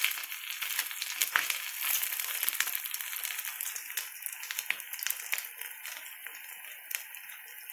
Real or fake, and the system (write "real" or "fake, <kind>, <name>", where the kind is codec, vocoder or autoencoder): real